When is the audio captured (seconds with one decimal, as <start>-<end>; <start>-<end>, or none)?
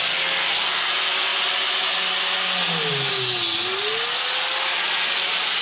0.0-5.6